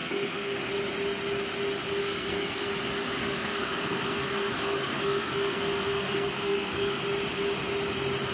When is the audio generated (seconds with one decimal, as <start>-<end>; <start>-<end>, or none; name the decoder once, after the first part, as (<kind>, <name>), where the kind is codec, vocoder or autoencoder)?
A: 0.0-0.7 (codec, SNAC); 2.0-2.7; 3.2-7.0